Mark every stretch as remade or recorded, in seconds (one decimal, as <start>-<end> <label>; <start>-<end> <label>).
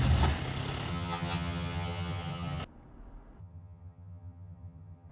0.0-0.9 recorded; 0.9-2.6 remade; 2.6-3.4 recorded; 3.4-5.1 remade